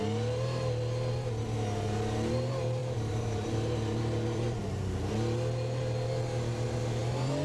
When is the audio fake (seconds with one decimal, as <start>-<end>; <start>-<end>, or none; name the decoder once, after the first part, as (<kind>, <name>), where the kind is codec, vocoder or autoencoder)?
2.8-5.1 (vocoder, BigVGAN v2)